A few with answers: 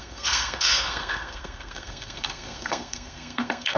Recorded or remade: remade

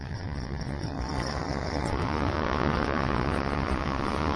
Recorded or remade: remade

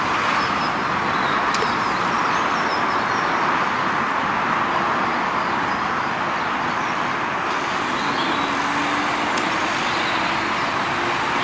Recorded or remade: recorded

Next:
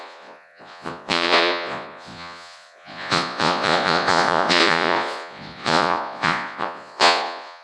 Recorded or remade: remade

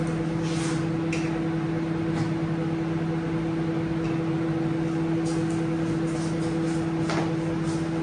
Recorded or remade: recorded